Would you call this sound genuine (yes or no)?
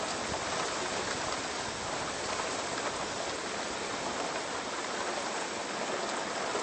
yes